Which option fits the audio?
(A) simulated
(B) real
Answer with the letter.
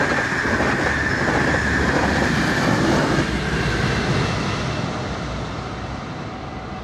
B